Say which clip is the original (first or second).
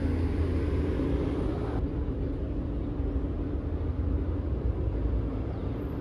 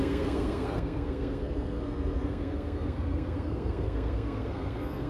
first